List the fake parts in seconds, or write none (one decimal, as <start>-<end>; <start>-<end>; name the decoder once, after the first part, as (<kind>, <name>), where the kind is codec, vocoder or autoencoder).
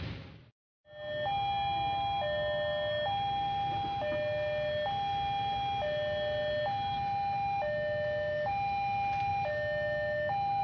none